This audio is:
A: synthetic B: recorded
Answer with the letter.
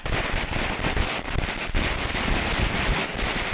B